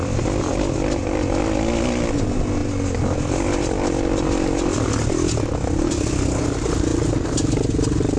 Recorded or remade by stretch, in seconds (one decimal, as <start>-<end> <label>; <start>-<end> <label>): 0.0-8.2 recorded